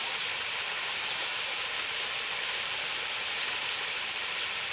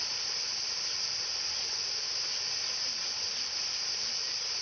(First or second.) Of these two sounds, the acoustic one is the second